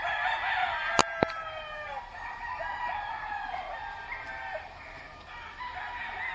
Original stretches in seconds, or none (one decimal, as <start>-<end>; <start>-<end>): 0.0-6.3